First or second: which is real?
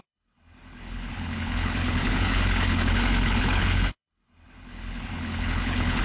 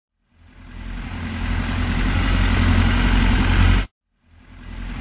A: second